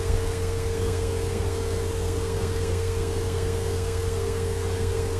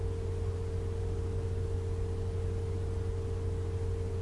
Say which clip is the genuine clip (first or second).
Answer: second